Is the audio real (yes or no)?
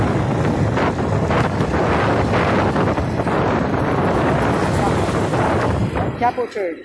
yes